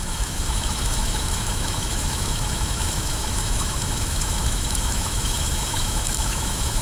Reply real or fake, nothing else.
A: fake